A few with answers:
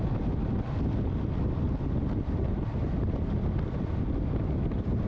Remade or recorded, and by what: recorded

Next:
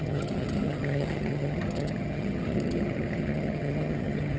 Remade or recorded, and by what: remade, vocoder, HiFi-GAN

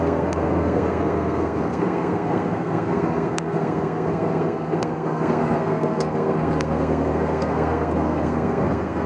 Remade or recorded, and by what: remade, codec, SNAC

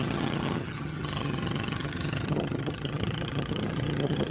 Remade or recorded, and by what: remade, vocoder, HiFi-GAN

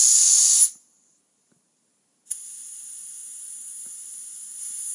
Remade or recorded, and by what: recorded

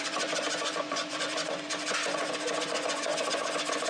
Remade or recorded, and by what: remade, vocoder, Vocos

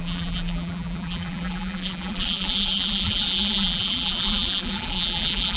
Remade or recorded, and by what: remade, vocoder, BigVGAN v2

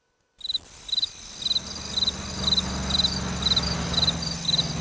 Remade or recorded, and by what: recorded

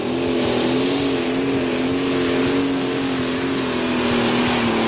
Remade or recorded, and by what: recorded